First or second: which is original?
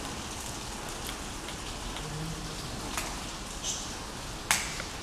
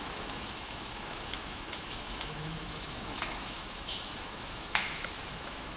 first